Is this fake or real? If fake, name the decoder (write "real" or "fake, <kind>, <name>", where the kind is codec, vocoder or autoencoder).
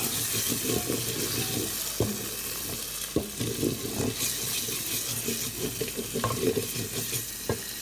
real